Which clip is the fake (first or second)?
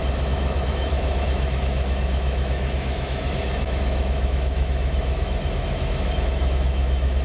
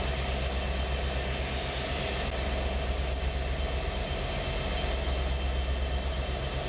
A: first